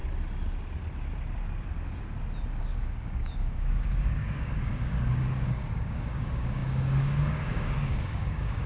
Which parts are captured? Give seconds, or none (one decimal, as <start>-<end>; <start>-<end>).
0.0-2.6